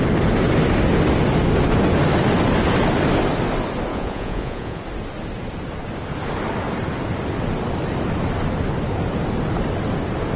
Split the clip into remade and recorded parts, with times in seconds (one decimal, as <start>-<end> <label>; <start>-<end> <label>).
0.0-3.9 recorded; 3.9-4.8 remade; 4.8-10.4 recorded